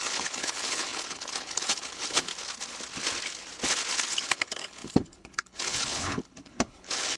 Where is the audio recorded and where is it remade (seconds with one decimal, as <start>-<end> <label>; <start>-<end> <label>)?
0.0-2.3 remade; 2.3-4.1 recorded; 4.1-7.2 remade